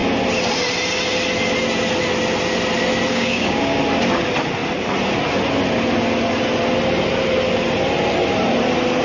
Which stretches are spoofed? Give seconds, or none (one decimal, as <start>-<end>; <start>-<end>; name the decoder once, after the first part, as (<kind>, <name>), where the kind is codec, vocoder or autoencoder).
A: 3.1-3.8 (codec, DAC)